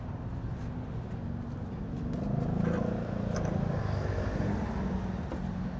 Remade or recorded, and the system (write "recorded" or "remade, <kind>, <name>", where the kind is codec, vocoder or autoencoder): recorded